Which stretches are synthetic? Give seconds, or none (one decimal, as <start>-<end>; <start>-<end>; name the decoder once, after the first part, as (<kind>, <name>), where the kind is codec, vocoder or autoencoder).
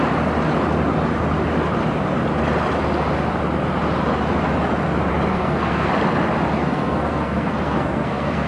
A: 5.3-5.9 (codec, SNAC); 6.6-8.5